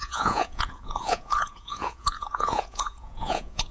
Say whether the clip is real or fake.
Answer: fake